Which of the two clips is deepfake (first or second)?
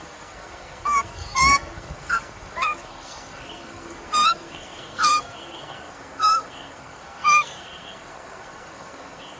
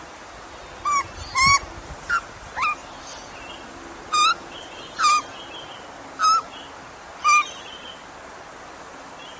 first